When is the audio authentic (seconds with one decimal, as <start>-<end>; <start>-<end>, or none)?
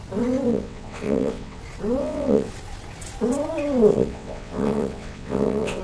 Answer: 0.0-0.5; 1.6-2.0; 2.5-3.9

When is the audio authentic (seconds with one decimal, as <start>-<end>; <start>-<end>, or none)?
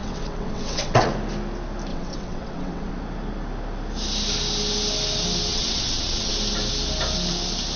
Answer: 1.1-1.9; 2.9-5.5; 6.3-7.8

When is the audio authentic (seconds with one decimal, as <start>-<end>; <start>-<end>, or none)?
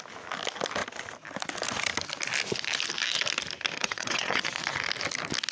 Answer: 0.0-3.8; 4.4-5.5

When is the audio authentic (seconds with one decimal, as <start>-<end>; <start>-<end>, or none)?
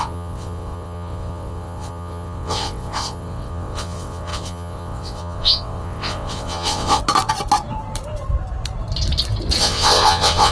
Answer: 7.0-9.6